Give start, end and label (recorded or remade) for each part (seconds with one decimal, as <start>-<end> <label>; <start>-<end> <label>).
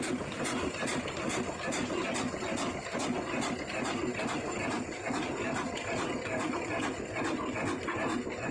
0.0-8.5 recorded